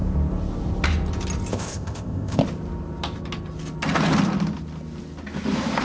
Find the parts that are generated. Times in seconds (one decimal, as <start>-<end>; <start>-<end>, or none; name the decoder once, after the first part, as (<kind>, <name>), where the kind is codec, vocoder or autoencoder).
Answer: 1.5-2.4 (codec, ZipCodec)